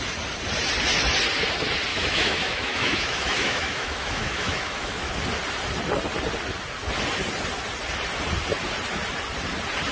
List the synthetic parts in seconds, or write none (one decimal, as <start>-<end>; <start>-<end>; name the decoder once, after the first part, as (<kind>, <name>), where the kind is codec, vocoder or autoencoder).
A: 1.9-5.1 (autoencoder, DAC-VAE)